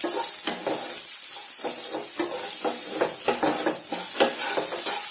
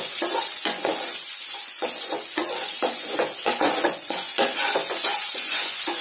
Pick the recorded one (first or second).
first